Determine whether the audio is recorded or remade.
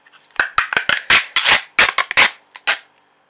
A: recorded